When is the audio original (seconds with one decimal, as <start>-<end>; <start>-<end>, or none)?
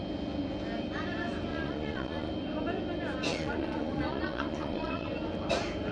0.0-1.5; 2.3-3.3; 5.1-5.9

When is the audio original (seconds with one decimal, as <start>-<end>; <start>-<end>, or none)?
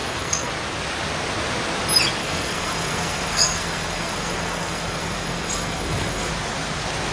0.5-2.2; 6.3-7.1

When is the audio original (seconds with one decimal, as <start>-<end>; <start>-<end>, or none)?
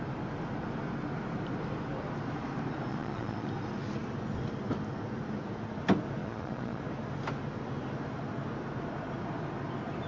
0.0-2.9; 3.5-6.2; 6.8-10.1